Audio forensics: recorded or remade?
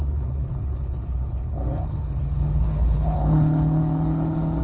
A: remade